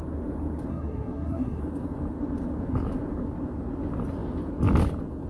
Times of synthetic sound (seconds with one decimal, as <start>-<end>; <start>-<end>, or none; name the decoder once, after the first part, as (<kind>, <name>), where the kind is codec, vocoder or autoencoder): 0.7-1.6 (codec, SNAC)

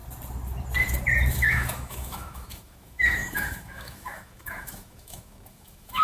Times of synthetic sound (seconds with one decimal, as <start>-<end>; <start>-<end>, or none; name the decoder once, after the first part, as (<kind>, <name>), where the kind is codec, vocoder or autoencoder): 1.3-6.0 (autoencoder, DAC-VAE)

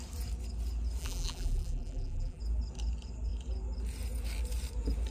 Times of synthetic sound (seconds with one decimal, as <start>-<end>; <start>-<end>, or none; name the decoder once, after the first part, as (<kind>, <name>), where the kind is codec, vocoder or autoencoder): 1.0-2.4 (vocoder, BigVGAN v2)

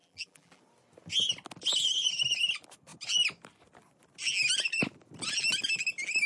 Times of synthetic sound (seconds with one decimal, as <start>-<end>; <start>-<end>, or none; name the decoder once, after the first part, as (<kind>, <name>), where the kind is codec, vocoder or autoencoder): 0.0-0.6 (vocoder, BigVGAN v2)

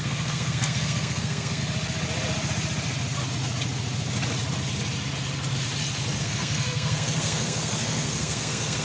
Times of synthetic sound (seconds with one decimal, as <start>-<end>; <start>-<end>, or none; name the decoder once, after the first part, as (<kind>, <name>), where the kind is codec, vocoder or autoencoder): 0.0-1.6 (codec, SNAC); 6.2-8.8

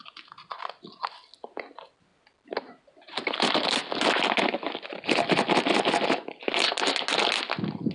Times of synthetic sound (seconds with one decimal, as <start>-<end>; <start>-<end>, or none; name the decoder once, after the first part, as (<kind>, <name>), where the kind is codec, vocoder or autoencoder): none

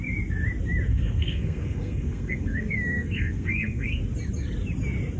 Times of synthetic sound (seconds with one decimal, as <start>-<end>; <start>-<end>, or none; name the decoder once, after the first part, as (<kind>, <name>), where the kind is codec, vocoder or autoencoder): 0.9-4.0 (codec, SNAC)

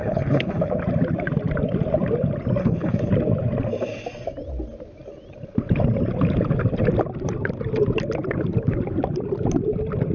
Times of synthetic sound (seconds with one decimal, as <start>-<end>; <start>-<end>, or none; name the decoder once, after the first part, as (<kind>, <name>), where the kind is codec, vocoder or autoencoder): 0.0-0.7 (codec, HILCodec); 2.6-3.1